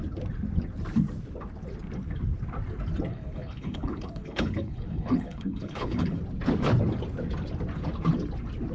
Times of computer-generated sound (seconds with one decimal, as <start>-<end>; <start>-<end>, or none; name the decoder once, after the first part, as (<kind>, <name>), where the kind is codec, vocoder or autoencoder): 3.1-6.2 (codec, HILCodec)

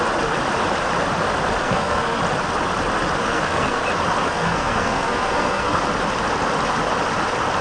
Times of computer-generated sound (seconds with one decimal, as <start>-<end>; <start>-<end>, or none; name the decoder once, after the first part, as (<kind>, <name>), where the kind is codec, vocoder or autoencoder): 1.6-2.2 (codec, SNAC); 3.2-3.8; 4.3-5.7

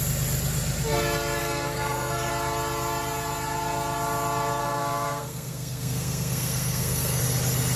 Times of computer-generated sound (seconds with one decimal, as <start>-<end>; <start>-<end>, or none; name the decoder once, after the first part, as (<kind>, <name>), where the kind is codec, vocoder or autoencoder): 1.4-2.3 (codec, SNAC); 4.6-7.2

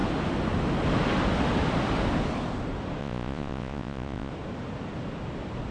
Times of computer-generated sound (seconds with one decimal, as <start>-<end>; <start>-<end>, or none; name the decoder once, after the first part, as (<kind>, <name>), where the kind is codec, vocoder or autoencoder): 3.0-4.3 (vocoder, Vocos)